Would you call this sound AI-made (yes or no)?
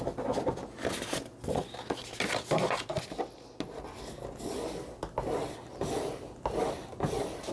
no